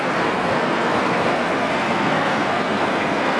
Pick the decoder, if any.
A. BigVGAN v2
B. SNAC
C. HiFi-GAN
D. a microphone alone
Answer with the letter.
B